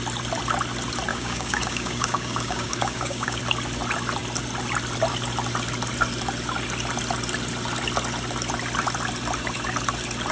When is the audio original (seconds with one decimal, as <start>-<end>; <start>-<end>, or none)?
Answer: 0.0-1.1; 3.4-10.3